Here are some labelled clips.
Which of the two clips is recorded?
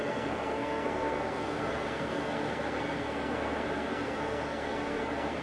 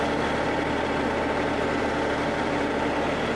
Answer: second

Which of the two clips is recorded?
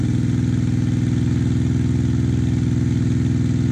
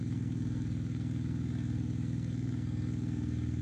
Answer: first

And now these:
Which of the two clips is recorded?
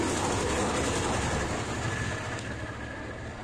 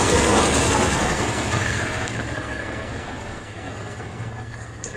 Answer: first